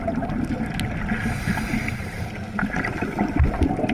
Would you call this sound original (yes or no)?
yes